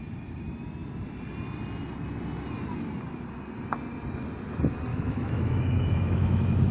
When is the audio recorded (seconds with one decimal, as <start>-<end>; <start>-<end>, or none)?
0.0-4.9